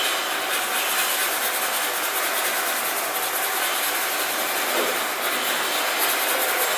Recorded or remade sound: recorded